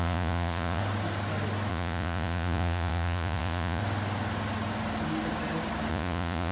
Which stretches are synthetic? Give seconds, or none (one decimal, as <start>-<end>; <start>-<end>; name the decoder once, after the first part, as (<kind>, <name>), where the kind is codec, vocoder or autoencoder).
0.0-0.8 (vocoder, Vocos); 1.7-3.8; 5.9-6.5